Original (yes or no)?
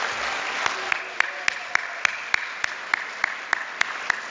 yes